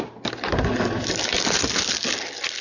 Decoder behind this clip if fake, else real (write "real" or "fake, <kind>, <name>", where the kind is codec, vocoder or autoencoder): real